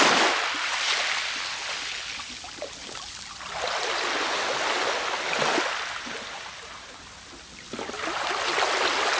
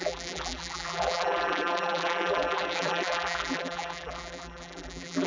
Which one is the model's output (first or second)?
second